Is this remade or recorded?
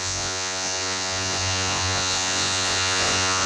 remade